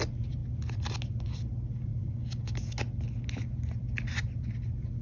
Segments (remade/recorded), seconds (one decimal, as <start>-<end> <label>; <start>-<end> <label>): 0.0-5.0 recorded